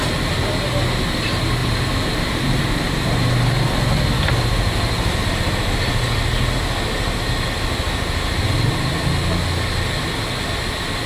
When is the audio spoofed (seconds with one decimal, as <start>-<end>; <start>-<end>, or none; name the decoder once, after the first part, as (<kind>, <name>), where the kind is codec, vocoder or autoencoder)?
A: 1.6-2.6 (vocoder, BigVGAN v2)